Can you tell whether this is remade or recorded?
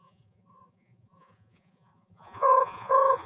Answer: remade